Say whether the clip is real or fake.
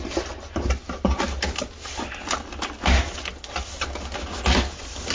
real